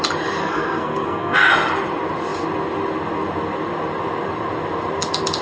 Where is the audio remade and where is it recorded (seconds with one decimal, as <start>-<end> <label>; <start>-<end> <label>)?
0.0-0.4 recorded; 0.4-1.5 remade; 1.5-5.4 recorded